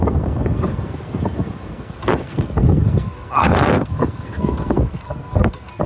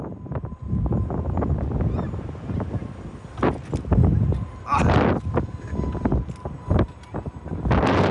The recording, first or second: second